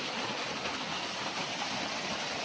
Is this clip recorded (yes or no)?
yes